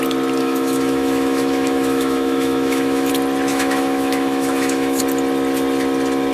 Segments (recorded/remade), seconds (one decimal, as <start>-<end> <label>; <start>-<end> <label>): 0.0-0.4 recorded; 0.4-3.1 remade; 3.1-3.5 recorded; 3.5-5.0 remade; 5.0-6.3 recorded